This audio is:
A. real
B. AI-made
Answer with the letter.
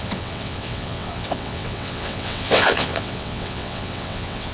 B